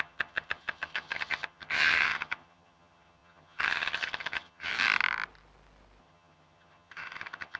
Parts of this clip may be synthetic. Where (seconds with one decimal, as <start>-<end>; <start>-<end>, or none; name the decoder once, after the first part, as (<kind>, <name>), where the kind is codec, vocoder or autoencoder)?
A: 0.0-4.7 (vocoder, HiFi-GAN); 6.0-7.6